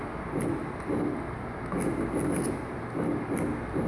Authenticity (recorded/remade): recorded